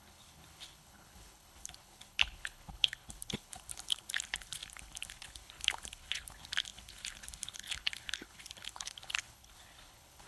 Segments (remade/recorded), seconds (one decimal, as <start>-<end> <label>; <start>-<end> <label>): 0.0-10.3 remade